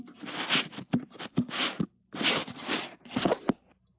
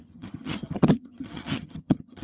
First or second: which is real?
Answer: first